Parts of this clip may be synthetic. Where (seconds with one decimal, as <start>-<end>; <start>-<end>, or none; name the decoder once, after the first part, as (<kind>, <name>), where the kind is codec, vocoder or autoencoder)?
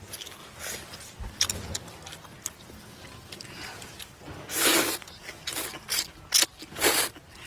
none